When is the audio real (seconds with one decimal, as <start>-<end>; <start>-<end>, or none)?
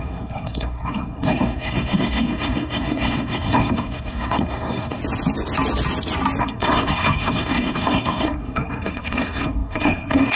5.0-6.4